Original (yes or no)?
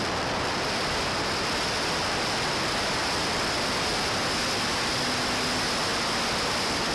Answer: yes